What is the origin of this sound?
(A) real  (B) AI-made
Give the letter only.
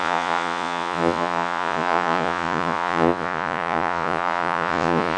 B